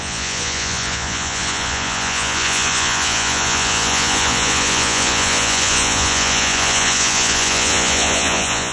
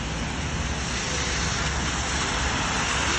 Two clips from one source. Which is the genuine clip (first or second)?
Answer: second